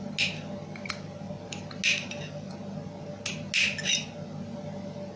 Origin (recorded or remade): recorded